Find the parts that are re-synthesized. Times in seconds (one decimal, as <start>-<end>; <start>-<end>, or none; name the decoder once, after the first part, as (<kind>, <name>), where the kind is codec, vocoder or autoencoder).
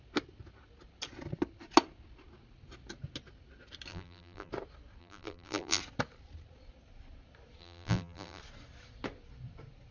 3.9-4.5 (vocoder, BigVGAN v2); 5.0-5.8; 7.6-8.4